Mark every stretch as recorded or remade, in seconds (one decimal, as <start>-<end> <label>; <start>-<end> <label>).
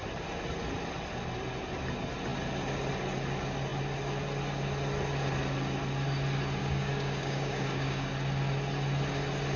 0.0-6.6 recorded; 6.6-8.1 remade; 8.1-9.6 recorded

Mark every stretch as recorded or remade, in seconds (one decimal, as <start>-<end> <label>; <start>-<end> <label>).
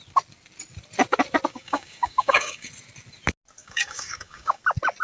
0.0-1.5 recorded; 1.5-2.7 remade; 2.7-3.6 recorded; 3.6-4.6 remade; 4.6-5.0 recorded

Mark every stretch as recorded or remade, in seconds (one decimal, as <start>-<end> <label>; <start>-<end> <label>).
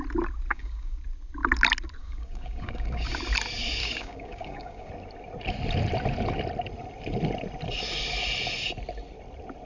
0.0-0.5 recorded; 0.5-1.0 remade; 1.0-2.0 recorded; 2.0-3.2 remade; 3.2-3.8 recorded; 3.8-4.9 remade; 4.9-9.7 recorded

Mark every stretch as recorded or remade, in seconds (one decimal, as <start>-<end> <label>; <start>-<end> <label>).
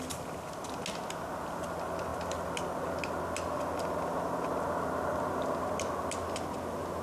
0.0-7.0 recorded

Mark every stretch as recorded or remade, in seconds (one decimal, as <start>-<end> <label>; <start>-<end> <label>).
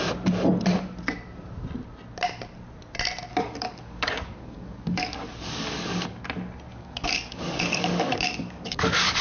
0.0-3.3 recorded; 3.3-6.2 remade; 6.2-6.7 recorded; 6.7-9.2 remade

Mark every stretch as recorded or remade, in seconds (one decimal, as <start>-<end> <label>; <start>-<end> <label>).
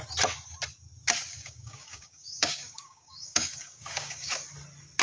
0.0-1.3 recorded; 1.3-4.3 remade; 4.3-5.0 recorded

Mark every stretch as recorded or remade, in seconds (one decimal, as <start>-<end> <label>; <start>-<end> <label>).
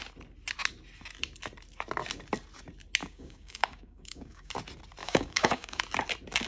0.0-3.0 recorded; 3.0-4.5 remade; 4.5-5.0 recorded; 5.0-5.8 remade; 5.8-6.5 recorded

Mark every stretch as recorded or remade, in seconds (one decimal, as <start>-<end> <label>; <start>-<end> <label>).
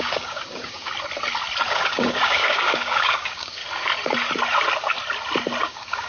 0.0-0.9 remade; 0.9-1.7 recorded; 1.7-3.6 remade; 3.6-5.6 recorded; 5.6-6.1 remade